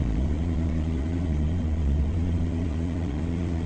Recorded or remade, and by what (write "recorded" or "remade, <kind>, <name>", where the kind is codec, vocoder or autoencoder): remade, vocoder, Vocos